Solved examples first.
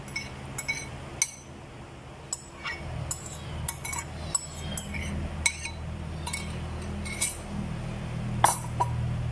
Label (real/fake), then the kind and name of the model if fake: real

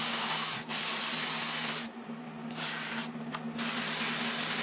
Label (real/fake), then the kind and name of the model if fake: real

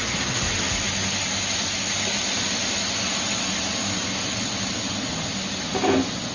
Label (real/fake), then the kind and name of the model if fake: real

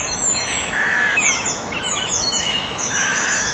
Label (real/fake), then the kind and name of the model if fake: fake, autoencoder, DAC-VAE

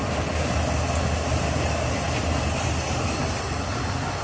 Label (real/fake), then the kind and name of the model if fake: real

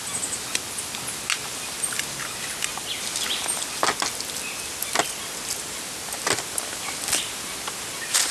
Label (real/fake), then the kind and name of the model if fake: real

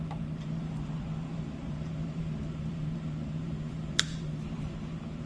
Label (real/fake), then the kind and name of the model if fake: fake, vocoder, BigVGAN v2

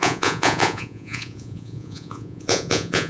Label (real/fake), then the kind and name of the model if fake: fake, vocoder, Vocos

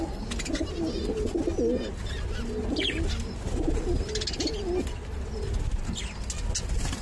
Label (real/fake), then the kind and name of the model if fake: real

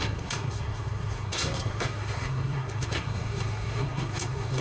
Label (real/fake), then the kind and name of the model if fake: fake, codec, SNAC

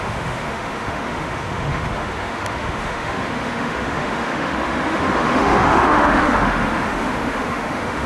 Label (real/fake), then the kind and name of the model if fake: fake, autoencoder, DAC-VAE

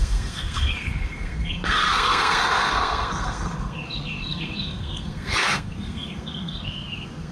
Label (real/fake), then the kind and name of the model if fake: fake, codec, SNAC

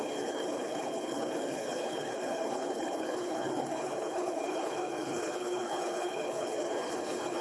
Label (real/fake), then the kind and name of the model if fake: fake, codec, HILCodec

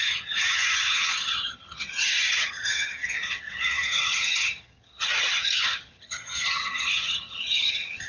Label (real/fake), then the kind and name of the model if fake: fake, vocoder, HiFi-GAN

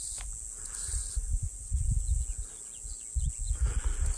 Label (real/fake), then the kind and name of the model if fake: real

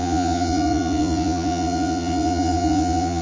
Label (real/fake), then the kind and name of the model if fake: fake, vocoder, Vocos